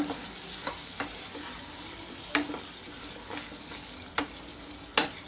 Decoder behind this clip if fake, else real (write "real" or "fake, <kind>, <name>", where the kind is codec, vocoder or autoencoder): real